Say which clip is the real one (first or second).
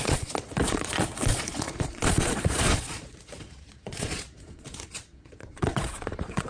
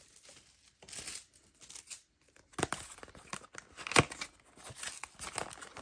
second